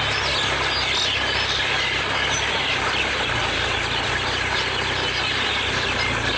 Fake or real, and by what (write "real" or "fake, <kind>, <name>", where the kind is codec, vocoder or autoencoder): real